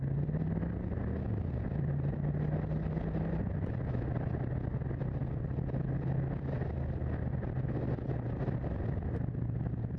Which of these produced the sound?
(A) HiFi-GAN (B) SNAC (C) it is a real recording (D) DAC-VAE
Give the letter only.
C